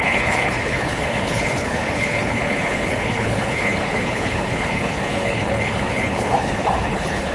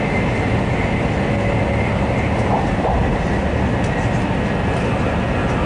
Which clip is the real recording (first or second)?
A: second